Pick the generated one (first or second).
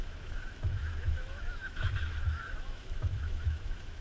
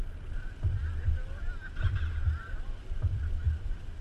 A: first